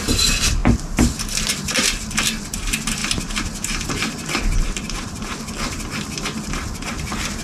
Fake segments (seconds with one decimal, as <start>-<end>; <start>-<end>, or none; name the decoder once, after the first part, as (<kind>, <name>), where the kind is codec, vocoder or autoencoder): 3.0-3.9 (vocoder, BigVGAN v2); 4.6-5.6